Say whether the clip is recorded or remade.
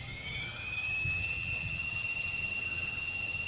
remade